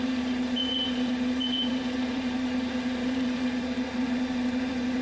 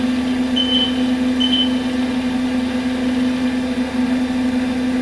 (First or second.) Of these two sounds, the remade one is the first